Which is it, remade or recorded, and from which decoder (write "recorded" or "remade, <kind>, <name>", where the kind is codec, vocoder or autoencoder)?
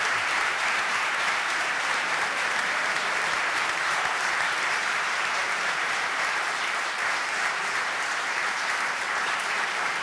remade, vocoder, BigVGAN v2